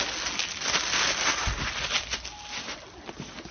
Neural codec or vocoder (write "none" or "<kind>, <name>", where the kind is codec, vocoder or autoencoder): none